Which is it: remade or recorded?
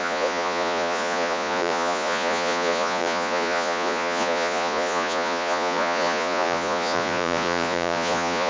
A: remade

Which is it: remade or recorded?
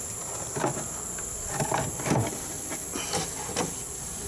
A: recorded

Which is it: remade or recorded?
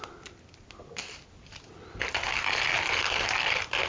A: recorded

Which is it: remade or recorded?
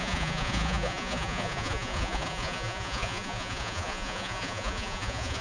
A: remade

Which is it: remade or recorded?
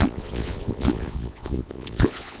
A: remade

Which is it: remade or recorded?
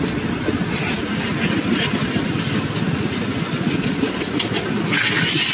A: recorded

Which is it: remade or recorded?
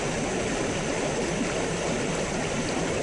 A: recorded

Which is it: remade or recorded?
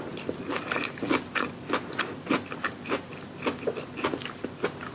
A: recorded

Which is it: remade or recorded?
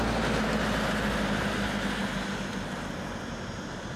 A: recorded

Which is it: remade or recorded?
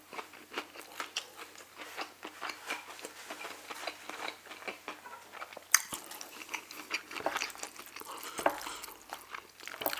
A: recorded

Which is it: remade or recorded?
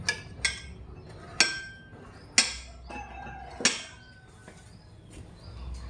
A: recorded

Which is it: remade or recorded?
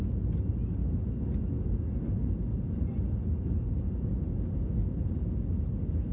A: recorded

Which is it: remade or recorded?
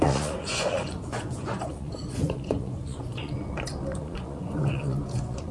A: remade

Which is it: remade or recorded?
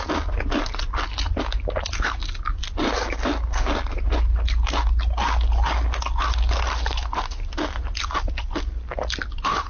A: recorded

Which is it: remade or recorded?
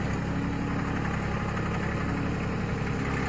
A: recorded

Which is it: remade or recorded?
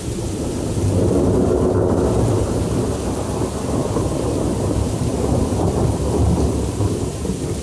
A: recorded